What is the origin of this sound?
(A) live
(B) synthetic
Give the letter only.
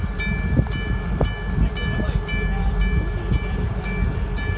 A